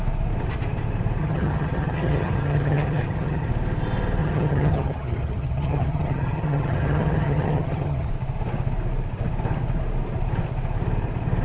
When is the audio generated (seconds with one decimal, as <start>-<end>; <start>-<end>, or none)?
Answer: 1.2-3.5; 4.2-8.1